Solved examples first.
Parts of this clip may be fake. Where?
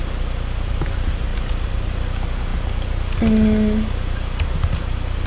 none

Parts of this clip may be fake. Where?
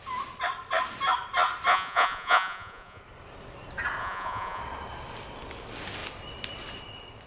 1.7-3.0 (vocoder, Vocos); 4.0-4.6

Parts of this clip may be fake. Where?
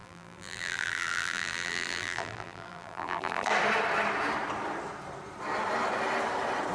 0.0-3.5 (vocoder, BigVGAN v2)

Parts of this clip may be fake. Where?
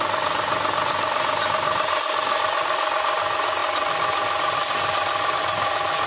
none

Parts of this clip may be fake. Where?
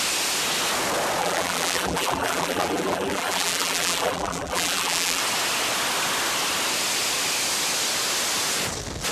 1.2-5.2 (vocoder, BigVGAN v2)